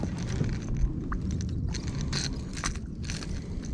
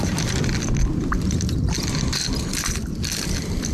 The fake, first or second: second